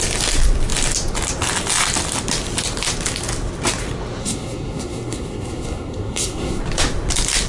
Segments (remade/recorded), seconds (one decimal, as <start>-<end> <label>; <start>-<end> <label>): 0.0-4.2 recorded; 4.2-6.6 remade; 6.6-7.5 recorded